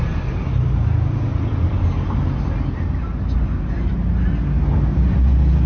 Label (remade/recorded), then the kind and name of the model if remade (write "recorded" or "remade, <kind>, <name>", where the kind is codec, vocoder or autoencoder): recorded